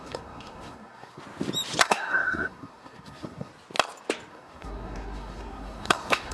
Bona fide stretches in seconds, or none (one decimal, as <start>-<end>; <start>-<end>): 1.2-1.8; 3.5-4.3